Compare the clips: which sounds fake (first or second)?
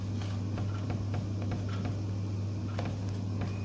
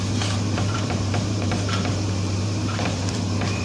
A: second